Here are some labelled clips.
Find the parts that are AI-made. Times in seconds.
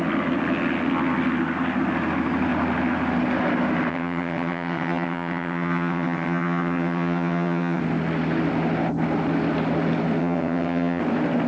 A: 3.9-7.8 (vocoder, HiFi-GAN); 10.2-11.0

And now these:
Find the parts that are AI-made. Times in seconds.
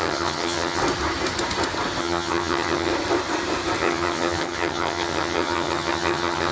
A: 0.0-0.8 (vocoder, HiFi-GAN); 2.0-2.9; 3.8-6.5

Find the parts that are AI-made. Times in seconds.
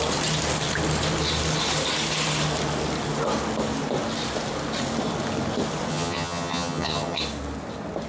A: 5.9-7.2 (vocoder, HiFi-GAN)